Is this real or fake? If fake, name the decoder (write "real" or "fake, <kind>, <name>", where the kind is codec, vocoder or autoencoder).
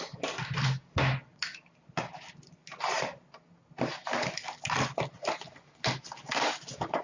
real